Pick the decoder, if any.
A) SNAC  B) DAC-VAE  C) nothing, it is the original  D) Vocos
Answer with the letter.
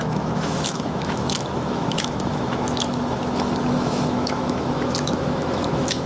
B